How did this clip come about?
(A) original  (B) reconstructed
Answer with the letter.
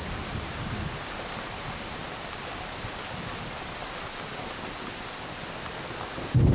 A